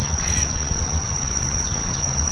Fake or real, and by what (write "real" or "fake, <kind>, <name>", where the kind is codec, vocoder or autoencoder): fake, vocoder, WaveNeXt